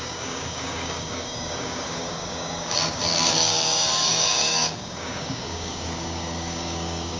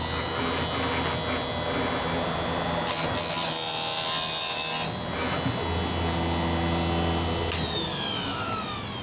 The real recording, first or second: second